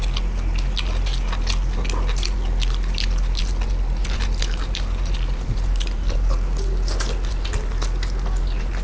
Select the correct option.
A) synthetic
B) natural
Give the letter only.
B